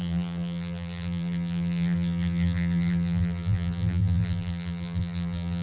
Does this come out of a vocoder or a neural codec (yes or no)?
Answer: yes